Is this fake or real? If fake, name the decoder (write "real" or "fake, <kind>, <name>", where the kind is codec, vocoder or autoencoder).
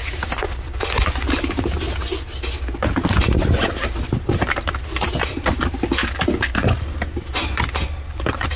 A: real